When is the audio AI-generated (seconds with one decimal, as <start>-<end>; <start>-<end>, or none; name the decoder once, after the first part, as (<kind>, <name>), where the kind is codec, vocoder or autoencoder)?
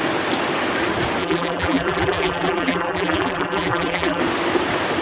1.2-4.2 (vocoder, BigVGAN v2)